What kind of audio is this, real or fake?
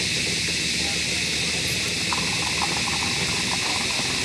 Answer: real